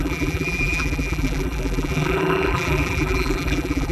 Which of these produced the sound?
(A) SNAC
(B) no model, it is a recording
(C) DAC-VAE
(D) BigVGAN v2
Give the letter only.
D